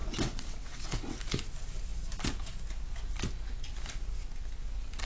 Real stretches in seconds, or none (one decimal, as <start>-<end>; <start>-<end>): 1.2-5.0